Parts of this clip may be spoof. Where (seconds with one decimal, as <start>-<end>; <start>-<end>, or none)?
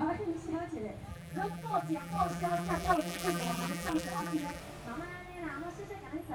1.1-4.6